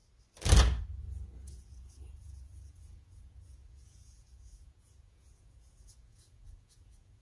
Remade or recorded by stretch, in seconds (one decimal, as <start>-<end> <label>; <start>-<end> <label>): 0.0-1.0 recorded; 1.0-7.2 remade